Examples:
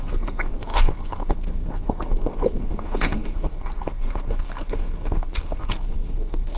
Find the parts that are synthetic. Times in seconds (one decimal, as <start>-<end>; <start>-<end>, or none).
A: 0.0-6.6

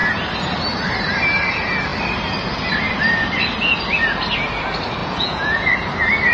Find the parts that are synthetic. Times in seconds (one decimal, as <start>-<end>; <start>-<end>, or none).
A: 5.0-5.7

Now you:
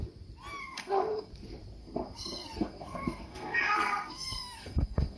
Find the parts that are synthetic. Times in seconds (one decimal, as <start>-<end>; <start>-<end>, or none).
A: 0.6-1.3; 1.8-5.2

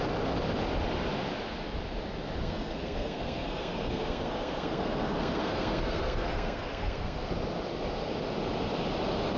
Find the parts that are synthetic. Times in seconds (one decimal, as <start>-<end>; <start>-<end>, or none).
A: 2.4-7.3

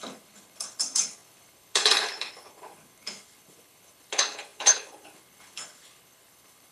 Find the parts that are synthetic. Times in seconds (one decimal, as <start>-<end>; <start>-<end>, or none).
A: 0.0-6.7